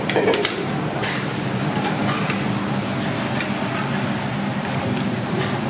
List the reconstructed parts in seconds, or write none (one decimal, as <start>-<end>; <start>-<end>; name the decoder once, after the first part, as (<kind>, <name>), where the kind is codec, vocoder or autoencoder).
0.0-2.0 (vocoder, BigVGAN v2); 4.8-5.7